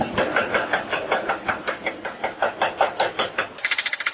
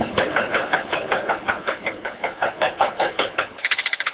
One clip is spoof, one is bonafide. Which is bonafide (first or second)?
first